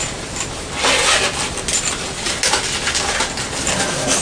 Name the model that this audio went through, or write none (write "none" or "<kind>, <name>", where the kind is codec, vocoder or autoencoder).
none